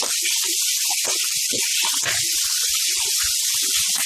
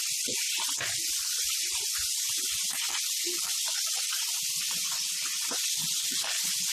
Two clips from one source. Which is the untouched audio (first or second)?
first